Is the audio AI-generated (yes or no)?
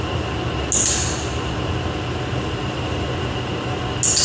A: no